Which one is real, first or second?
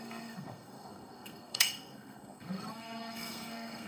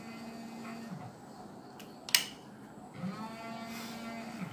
second